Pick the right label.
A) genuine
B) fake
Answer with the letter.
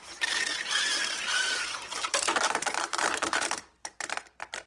B